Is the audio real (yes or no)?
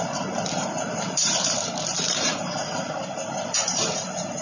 no